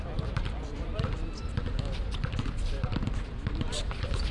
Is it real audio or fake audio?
real